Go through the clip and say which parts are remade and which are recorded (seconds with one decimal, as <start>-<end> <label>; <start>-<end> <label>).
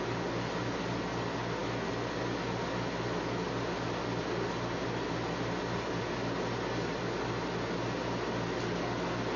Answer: 0.0-9.4 recorded